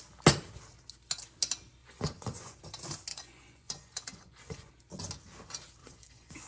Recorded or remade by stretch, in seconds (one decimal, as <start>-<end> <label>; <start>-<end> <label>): 0.0-1.8 recorded; 1.8-2.6 remade; 2.6-3.1 recorded; 3.1-4.7 remade; 4.7-5.8 recorded; 5.8-6.5 remade